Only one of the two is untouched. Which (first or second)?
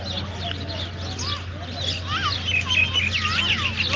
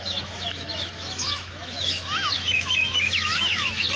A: first